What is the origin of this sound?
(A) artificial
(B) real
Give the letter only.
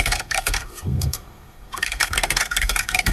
A